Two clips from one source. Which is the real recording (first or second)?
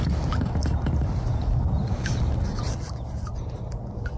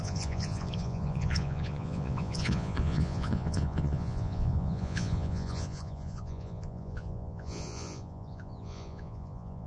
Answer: first